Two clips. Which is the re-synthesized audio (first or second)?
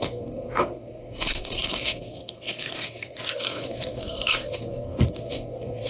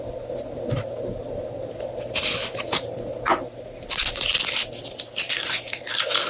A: first